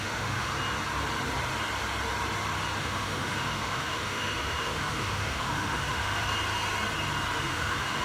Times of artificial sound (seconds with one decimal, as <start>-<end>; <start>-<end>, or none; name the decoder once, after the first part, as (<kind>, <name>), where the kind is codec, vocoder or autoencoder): 0.0-0.5 (autoencoder, DAC-VAE); 2.8-6.3; 7.4-8.0